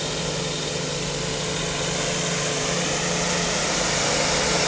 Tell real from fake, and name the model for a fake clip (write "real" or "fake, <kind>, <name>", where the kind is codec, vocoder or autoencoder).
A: real